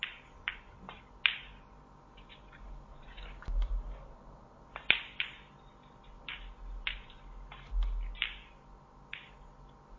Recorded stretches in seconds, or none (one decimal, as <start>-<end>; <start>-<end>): 0.0-10.0